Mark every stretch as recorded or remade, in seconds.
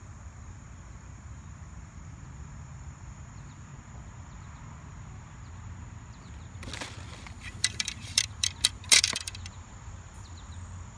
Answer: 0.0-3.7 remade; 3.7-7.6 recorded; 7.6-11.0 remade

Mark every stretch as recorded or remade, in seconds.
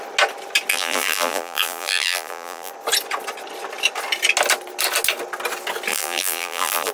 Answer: 0.0-0.7 recorded; 0.7-2.7 remade; 2.7-5.9 recorded; 5.9-6.9 remade